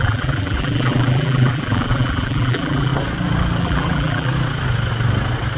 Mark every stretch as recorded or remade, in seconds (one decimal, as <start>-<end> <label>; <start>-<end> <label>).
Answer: 0.0-2.9 remade; 2.9-3.6 recorded; 3.6-4.3 remade; 4.3-5.6 recorded